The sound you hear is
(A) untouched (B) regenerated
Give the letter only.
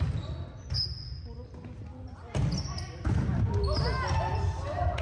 A